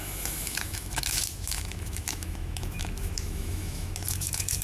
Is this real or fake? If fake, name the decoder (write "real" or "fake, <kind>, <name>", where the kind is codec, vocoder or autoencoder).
fake, autoencoder, DAC-VAE